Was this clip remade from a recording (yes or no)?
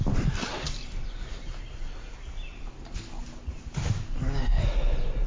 no